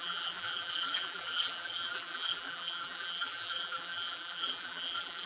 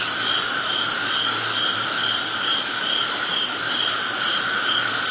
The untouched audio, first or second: second